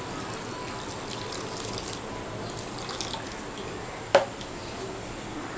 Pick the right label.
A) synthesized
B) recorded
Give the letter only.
B